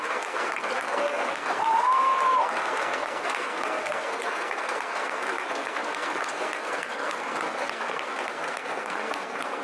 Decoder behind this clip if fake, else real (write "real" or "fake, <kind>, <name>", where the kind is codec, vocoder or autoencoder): fake, codec, SNAC